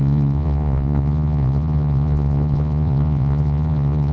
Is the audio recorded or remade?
remade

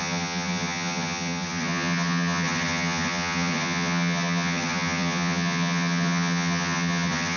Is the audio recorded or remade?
remade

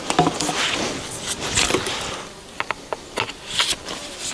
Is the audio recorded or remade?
recorded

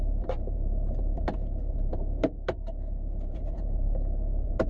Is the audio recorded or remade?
remade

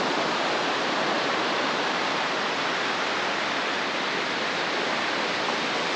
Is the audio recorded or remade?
recorded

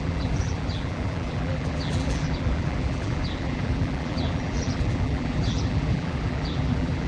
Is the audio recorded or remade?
remade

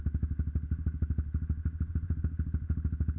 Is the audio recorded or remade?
recorded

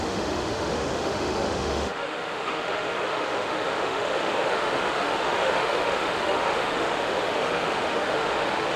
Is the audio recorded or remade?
remade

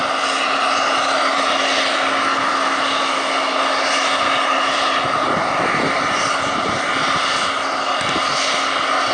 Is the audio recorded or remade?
recorded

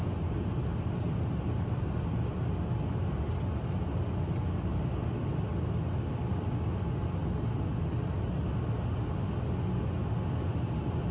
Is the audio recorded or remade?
recorded